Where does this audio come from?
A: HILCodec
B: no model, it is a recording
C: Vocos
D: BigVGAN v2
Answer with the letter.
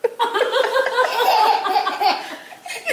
D